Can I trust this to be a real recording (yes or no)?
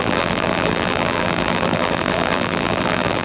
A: no